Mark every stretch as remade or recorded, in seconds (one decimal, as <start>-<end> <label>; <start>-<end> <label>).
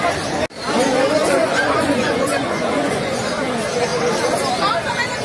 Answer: 0.0-1.2 recorded; 1.2-3.2 remade; 3.2-5.2 recorded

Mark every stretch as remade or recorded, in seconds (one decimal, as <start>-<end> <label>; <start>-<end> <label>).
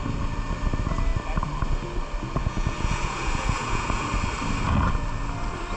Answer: 0.0-2.4 recorded; 2.4-4.1 remade; 4.1-5.8 recorded